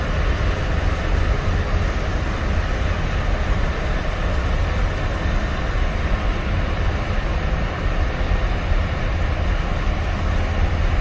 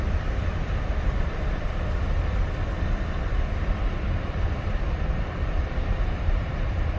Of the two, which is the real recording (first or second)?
first